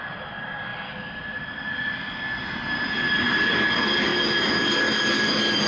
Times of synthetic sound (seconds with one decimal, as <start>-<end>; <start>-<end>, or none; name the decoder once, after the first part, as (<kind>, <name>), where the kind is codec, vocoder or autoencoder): 0.7-2.1 (vocoder, BigVGAN v2)